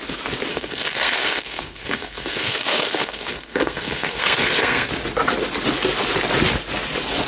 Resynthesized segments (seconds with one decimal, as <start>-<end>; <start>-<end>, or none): 0.5-4.9